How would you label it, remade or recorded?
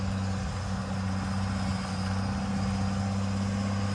recorded